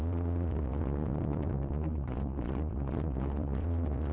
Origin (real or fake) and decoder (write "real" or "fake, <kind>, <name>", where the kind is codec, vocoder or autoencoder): fake, vocoder, Vocos